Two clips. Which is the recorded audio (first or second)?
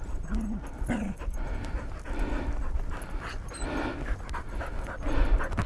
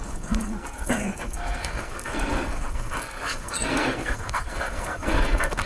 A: first